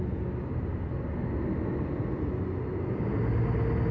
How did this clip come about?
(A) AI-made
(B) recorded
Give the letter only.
B